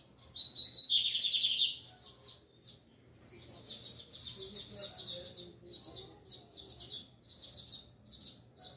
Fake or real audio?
real